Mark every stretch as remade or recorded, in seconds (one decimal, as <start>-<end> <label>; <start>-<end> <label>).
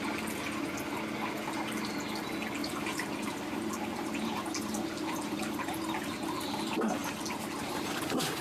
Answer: 0.0-2.6 recorded; 2.6-7.1 remade; 7.1-8.4 recorded